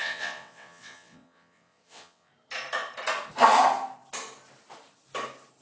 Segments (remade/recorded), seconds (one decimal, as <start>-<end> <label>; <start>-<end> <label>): 0.0-2.3 remade; 2.3-5.6 recorded